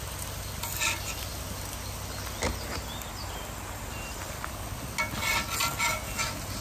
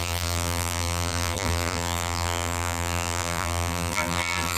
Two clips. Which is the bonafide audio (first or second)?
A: first